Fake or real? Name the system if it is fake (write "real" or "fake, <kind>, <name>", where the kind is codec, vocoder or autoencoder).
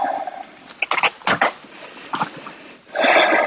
real